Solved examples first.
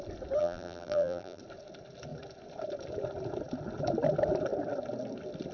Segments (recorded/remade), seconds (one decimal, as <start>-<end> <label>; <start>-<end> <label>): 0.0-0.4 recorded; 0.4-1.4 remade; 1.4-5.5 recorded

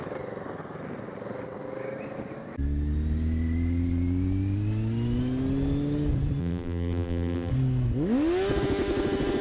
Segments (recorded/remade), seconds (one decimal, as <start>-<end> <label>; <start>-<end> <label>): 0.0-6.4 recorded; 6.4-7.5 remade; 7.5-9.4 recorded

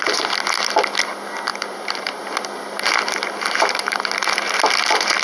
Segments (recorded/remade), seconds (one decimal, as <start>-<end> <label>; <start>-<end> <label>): 0.0-1.5 recorded; 1.5-2.2 remade; 2.2-5.2 recorded